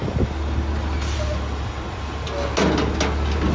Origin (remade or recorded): recorded